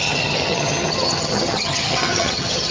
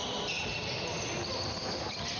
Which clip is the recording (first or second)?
second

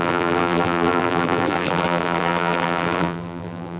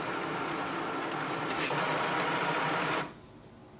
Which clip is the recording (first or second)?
second